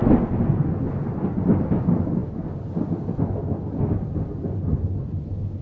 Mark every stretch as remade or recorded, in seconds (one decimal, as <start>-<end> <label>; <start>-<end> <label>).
0.0-5.6 recorded